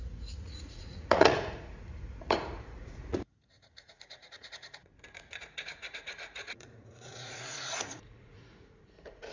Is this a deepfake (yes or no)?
yes